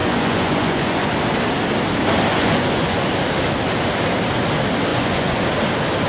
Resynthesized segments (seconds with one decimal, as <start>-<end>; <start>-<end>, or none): 0.0-1.1; 2.3-3.1; 4.9-5.4